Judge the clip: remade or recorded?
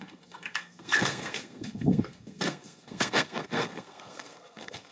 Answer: remade